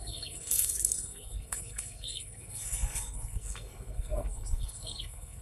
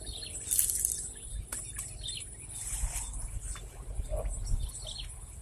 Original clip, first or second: second